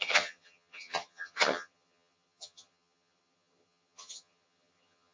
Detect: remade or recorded remade